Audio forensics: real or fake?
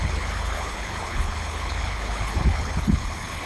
fake